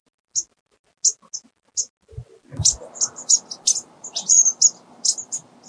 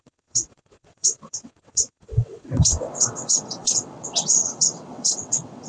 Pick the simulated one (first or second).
second